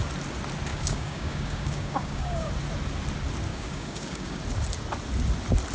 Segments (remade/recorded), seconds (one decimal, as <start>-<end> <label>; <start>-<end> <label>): 0.0-0.7 recorded; 0.7-2.5 remade; 2.5-3.5 recorded; 3.5-4.4 remade; 4.4-5.7 recorded